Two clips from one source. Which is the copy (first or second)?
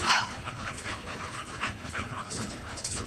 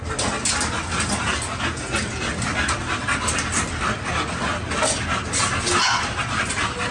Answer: first